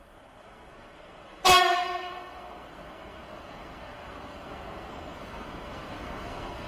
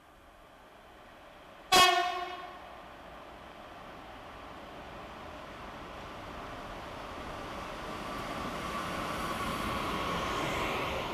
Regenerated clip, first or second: first